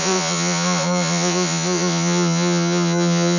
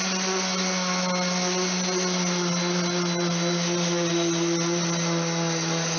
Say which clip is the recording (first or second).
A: second